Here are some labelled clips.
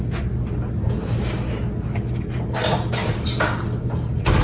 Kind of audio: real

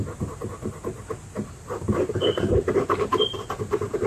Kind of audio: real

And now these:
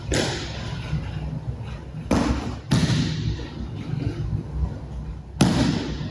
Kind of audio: real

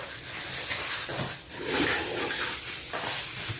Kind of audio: real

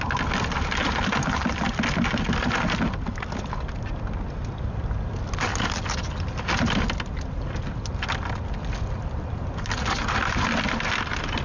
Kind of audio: real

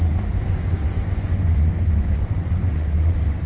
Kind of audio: fake